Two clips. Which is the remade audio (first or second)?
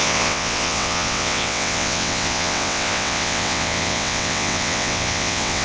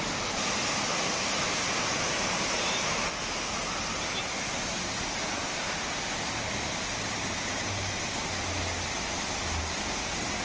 first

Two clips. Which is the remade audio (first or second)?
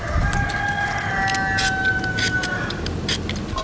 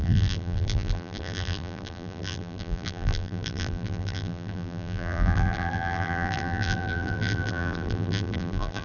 second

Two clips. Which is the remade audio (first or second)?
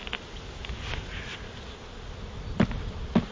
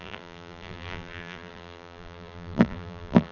second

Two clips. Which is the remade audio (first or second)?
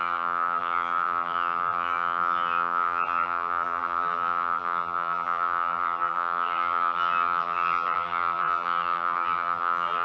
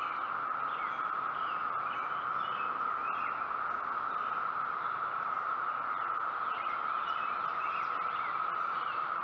first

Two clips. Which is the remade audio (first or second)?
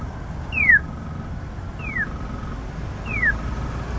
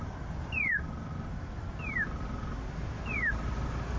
second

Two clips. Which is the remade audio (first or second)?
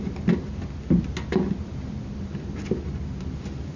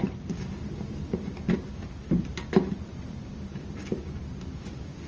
second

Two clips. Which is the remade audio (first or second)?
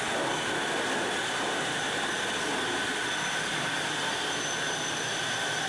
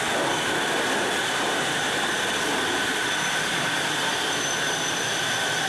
second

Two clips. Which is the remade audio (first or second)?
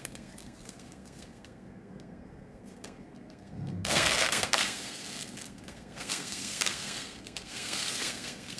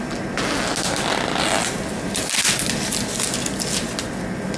first